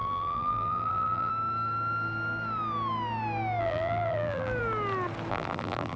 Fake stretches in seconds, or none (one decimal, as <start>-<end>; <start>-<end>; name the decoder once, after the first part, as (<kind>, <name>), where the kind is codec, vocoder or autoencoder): 0.0-1.3 (vocoder, BigVGAN v2); 3.6-4.5; 5.3-6.0